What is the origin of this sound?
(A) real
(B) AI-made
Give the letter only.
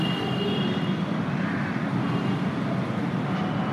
A